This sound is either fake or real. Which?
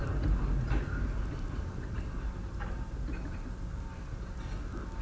real